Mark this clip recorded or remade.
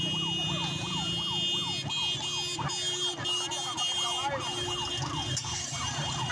recorded